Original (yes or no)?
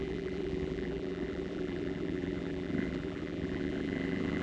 no